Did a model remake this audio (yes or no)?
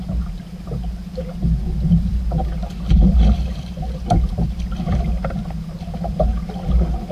no